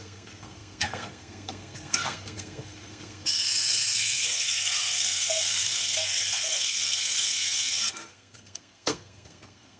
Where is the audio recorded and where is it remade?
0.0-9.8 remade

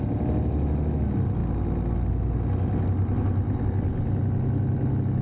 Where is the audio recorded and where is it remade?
0.0-5.2 recorded

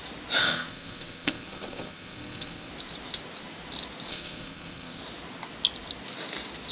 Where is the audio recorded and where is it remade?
0.0-0.4 recorded; 0.4-2.7 remade; 2.7-4.1 recorded; 4.1-5.0 remade; 5.0-6.7 recorded

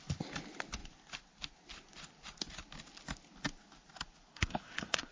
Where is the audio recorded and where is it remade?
0.0-4.3 recorded; 4.3-5.1 remade

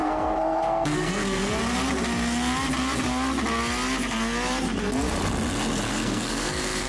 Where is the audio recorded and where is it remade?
0.0-1.5 remade; 1.5-5.9 recorded; 5.9-6.9 remade

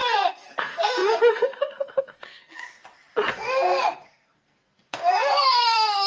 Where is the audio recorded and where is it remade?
0.0-2.6 remade; 2.6-3.3 recorded; 3.3-6.1 remade

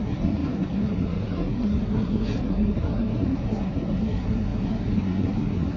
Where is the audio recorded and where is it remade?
0.0-5.8 remade